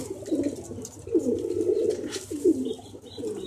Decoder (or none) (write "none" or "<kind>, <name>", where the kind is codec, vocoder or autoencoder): vocoder, BigVGAN v2